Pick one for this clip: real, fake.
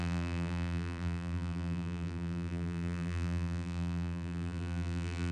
fake